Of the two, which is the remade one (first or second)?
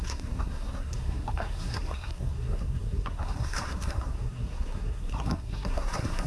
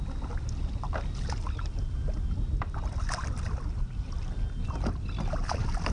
first